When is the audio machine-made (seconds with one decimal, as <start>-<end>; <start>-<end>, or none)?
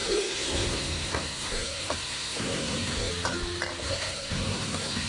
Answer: 0.0-3.1; 3.8-5.1